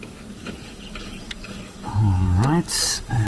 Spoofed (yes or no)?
yes